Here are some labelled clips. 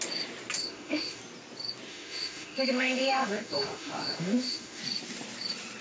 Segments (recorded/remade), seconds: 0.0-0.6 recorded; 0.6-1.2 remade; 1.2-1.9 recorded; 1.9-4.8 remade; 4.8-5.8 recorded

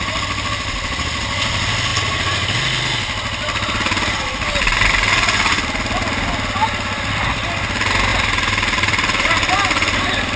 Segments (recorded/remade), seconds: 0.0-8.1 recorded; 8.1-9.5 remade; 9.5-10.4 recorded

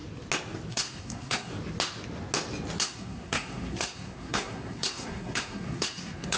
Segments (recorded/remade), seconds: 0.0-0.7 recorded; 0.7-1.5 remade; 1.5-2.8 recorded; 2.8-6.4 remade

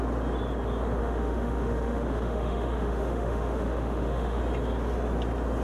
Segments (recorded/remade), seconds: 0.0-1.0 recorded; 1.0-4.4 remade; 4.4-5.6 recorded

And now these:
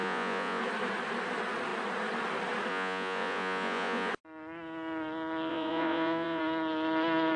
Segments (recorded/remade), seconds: 0.0-0.6 remade; 0.6-2.7 recorded; 2.7-4.1 remade; 4.1-5.5 recorded; 5.5-6.4 remade; 6.4-7.4 recorded